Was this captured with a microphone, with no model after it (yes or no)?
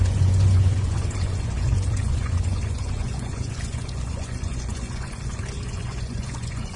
no